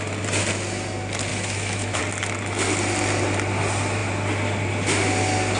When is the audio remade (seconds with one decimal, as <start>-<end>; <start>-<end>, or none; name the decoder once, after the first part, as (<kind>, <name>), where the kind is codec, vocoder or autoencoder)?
1.3-2.0 (autoencoder, DAC-VAE)

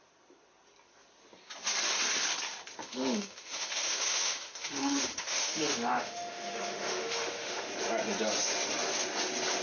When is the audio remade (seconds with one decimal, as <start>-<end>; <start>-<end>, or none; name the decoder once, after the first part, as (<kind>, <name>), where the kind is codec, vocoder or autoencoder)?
2.8-7.7 (autoencoder, DAC-VAE)

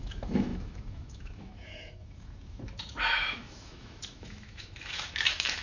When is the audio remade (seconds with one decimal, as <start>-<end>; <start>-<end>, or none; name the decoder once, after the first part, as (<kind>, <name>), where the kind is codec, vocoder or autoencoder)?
0.0-5.6 (autoencoder, DAC-VAE)